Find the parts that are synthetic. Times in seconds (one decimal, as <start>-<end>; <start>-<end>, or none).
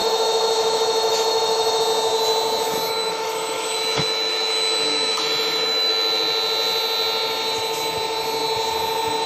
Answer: 0.0-1.8; 3.0-5.9